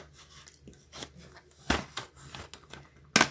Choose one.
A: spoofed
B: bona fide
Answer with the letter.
B